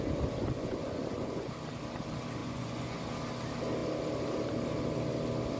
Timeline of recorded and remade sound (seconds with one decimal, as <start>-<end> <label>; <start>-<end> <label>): 0.0-0.6 recorded; 0.6-1.5 remade; 1.5-2.4 recorded; 2.4-3.0 remade; 3.0-5.6 recorded